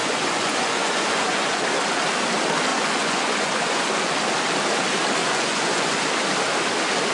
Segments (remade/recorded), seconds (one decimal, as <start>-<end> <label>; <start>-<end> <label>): 0.0-1.6 remade; 1.6-2.7 recorded; 2.7-4.1 remade; 4.1-5.2 recorded; 5.2-6.0 remade; 6.0-7.1 recorded